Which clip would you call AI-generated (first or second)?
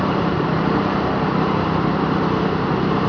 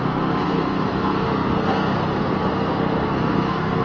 second